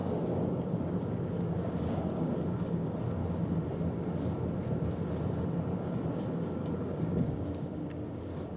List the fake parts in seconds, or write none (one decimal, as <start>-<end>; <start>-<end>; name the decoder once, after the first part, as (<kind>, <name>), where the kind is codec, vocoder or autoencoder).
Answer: 0.0-3.2 (codec, DAC); 5.7-8.6